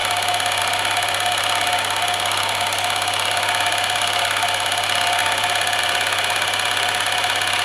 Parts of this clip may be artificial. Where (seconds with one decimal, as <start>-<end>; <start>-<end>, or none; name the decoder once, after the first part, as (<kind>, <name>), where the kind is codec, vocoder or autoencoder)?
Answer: none